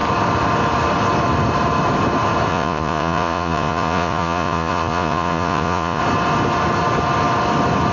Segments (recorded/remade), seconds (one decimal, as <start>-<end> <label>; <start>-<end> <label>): 0.0-2.5 recorded; 2.5-6.0 remade; 6.0-7.9 recorded